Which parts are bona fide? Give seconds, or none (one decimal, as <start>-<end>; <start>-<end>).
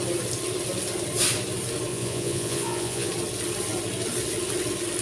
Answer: 0.0-1.9; 3.1-5.0